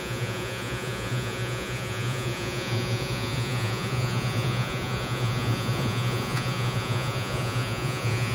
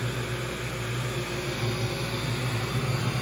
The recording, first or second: second